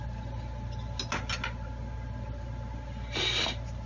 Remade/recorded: recorded